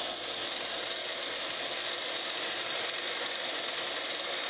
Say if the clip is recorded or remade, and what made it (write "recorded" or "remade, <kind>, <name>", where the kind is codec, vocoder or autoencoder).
remade, vocoder, BigVGAN v2